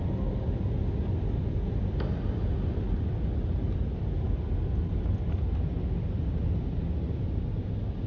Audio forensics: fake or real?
real